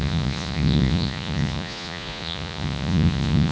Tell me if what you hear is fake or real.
fake